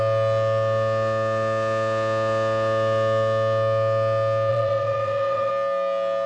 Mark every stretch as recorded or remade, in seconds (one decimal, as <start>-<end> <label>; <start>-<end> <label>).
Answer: 0.0-4.5 recorded; 4.5-5.5 remade; 5.5-6.3 recorded